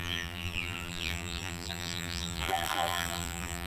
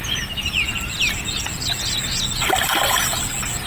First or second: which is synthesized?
first